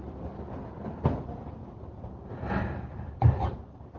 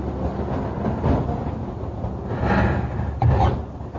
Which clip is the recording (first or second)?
second